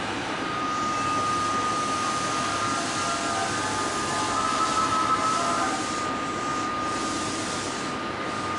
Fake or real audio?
real